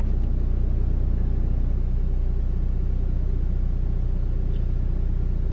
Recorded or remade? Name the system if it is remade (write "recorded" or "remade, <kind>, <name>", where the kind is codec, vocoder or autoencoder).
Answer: recorded